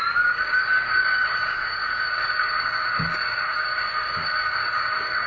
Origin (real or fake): fake